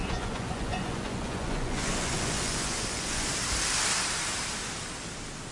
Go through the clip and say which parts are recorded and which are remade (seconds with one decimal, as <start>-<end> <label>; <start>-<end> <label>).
0.0-3.3 remade; 3.3-5.5 recorded